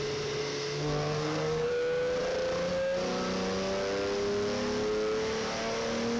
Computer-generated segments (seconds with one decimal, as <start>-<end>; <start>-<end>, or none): 0.4-1.7